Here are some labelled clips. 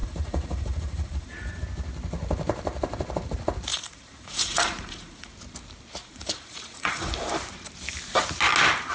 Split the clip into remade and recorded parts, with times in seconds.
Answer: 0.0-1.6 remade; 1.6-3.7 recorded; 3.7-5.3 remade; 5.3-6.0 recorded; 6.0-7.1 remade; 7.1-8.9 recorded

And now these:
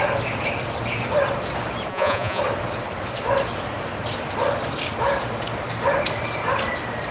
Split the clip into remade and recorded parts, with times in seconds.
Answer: 0.0-1.9 recorded; 1.9-2.4 remade; 2.4-7.1 recorded

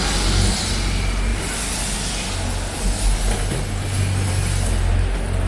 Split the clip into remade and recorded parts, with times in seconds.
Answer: 0.0-5.5 recorded

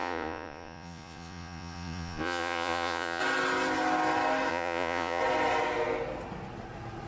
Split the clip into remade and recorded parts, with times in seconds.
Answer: 0.0-3.2 remade; 3.2-4.5 recorded; 4.5-5.2 remade; 5.2-7.1 recorded

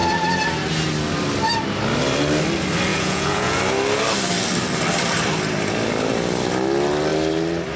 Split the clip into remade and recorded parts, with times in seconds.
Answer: 0.0-2.9 recorded; 2.9-3.6 remade; 3.6-7.8 recorded

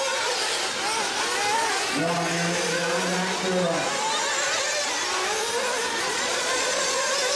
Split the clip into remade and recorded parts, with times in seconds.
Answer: 0.0-6.1 recorded; 6.1-6.8 remade; 6.8-7.4 recorded